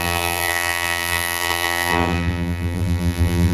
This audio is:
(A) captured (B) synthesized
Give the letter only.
B